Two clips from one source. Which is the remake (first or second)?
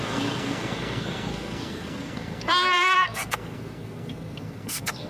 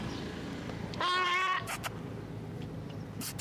first